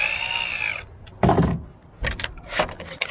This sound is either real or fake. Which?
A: real